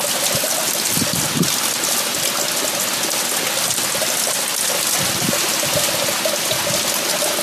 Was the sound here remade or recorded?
recorded